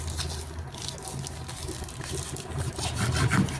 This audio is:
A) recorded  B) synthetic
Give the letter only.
A